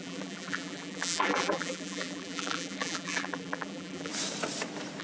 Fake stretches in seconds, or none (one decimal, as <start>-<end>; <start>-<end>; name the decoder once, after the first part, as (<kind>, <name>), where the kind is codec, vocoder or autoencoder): 0.0-4.1 (vocoder, BigVGAN v2)